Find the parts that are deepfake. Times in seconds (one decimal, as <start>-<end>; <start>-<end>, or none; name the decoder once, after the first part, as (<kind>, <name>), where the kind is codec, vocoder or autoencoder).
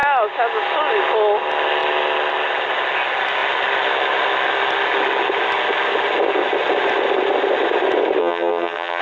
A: 8.2-9.0 (vocoder, HiFi-GAN)